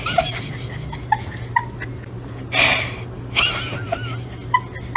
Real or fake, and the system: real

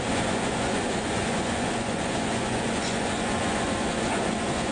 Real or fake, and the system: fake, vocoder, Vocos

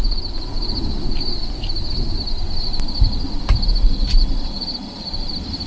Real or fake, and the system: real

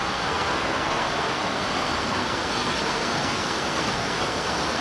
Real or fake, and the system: fake, codec, SNAC